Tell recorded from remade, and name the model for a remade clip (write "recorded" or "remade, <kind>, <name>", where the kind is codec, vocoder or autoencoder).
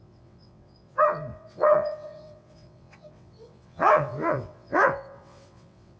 remade, vocoder, WaveNeXt